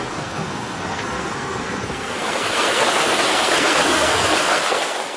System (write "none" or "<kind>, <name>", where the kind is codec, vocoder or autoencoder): codec, SNAC